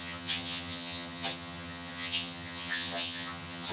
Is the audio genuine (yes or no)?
no